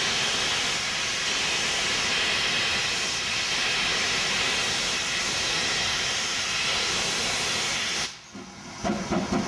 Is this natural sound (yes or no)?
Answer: yes